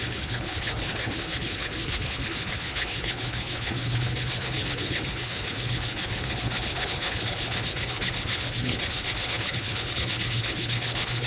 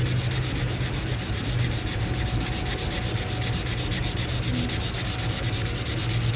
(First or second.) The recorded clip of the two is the second